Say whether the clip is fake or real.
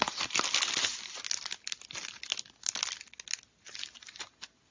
real